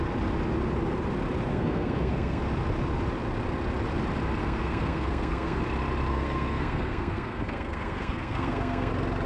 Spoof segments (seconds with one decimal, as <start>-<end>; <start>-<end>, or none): 1.5-2.4; 4.4-5.6; 6.1-8.9